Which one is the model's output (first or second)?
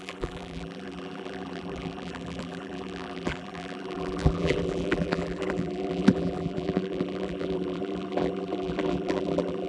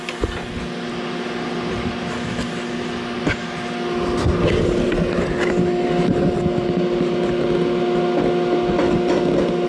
first